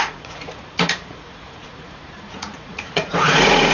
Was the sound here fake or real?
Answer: fake